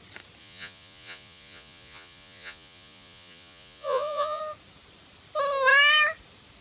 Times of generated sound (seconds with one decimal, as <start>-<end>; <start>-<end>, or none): 0.4-4.4